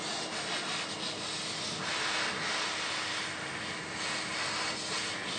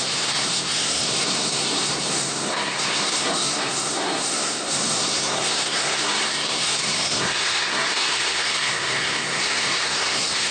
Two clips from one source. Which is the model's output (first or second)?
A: second